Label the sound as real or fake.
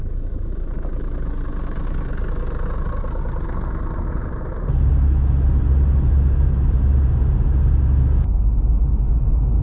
real